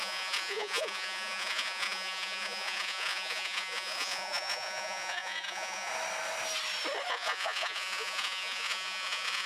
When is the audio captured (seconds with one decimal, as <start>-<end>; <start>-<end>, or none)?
5.9-7.1